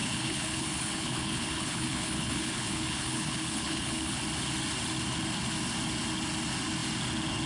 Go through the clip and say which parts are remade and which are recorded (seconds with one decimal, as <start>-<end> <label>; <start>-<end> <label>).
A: 0.0-4.2 remade; 4.2-7.5 recorded